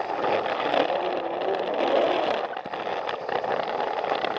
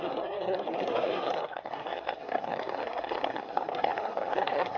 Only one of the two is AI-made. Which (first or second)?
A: second